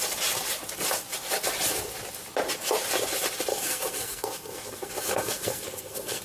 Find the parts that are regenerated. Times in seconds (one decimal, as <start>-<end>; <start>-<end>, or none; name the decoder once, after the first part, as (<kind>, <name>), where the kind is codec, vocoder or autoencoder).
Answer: 3.5-6.2 (codec, SNAC)